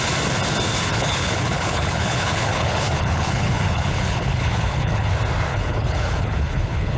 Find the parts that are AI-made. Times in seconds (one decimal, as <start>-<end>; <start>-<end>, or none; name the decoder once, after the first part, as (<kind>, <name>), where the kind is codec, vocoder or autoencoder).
0.9-5.1 (codec, HILCodec); 5.5-7.0